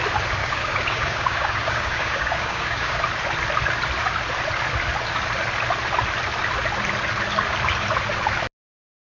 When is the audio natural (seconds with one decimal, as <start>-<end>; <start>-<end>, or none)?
0.0-0.4; 3.0-9.1